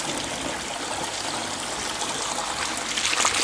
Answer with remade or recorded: recorded